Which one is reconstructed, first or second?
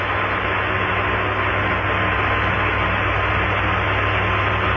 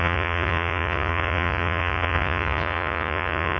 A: second